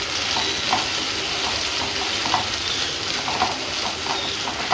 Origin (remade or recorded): recorded